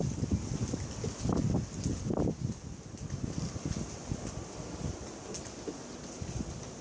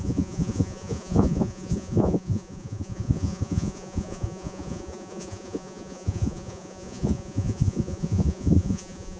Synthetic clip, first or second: second